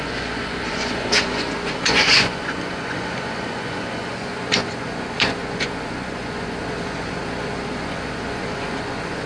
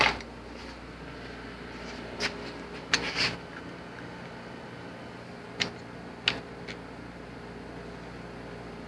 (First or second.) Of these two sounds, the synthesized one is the first